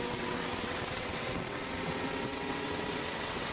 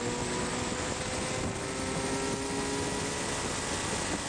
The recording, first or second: second